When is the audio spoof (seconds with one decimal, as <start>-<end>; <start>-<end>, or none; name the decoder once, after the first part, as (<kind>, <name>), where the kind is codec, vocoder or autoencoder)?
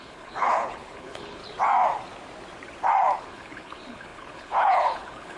0.0-1.4 (codec, HILCodec); 3.2-5.4